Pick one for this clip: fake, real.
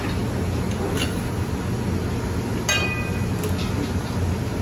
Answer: real